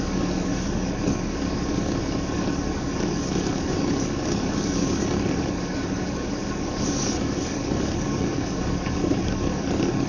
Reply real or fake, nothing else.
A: fake